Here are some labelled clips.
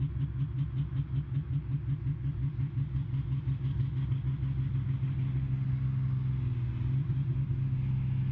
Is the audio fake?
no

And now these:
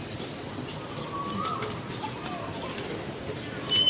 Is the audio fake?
no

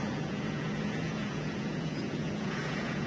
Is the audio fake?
yes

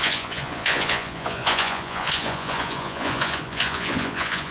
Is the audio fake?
yes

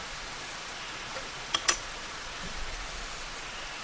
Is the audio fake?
yes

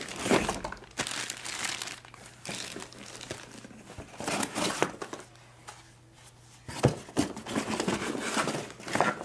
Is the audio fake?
no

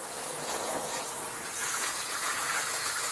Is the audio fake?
yes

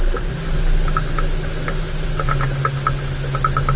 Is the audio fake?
no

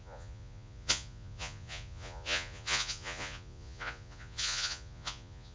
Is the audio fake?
yes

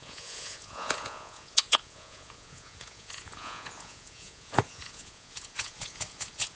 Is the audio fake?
yes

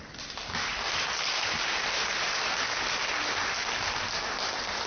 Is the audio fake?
no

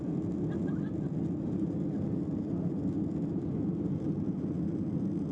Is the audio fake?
no